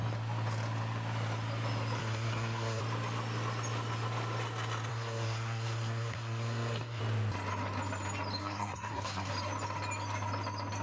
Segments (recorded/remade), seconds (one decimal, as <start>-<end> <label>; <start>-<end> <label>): 0.0-2.0 recorded; 2.0-2.8 remade; 2.8-4.9 recorded; 4.9-7.0 remade; 7.0-8.4 recorded; 8.4-9.3 remade; 9.3-10.8 recorded